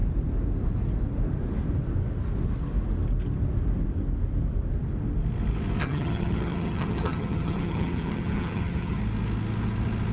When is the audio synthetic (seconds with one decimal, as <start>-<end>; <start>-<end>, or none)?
5.8-9.0